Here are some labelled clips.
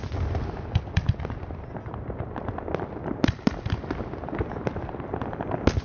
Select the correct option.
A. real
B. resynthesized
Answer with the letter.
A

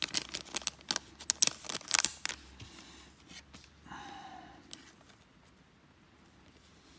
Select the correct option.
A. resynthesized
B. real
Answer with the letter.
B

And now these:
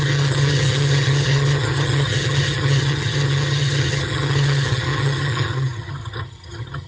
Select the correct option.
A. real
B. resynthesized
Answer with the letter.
B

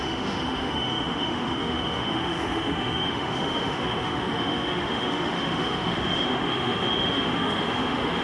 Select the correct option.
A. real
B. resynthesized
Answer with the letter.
B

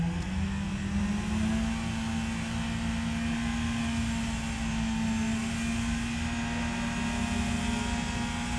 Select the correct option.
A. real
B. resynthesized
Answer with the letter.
A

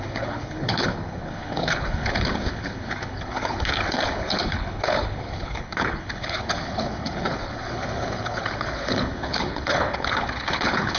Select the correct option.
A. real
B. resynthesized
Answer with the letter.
B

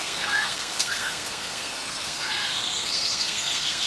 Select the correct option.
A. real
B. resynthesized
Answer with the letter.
B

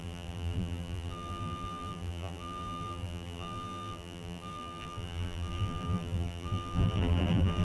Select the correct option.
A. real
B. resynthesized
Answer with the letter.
B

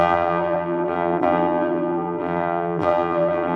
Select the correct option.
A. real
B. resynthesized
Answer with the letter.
B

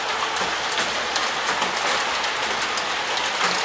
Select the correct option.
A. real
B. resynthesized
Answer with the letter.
A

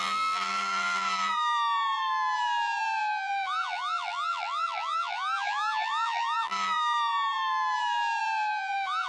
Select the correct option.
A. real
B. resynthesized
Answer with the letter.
B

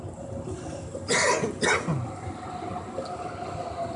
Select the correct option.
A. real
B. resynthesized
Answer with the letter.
A